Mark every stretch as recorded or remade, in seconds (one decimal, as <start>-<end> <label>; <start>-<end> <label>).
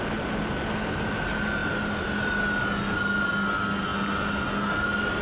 0.0-5.2 recorded